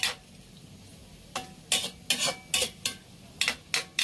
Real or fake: real